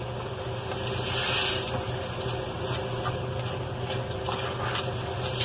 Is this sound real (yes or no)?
yes